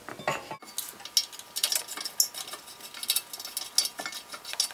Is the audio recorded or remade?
recorded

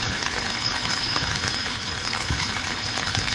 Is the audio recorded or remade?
remade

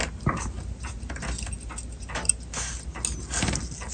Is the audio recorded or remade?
recorded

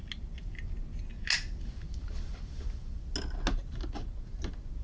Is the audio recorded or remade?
recorded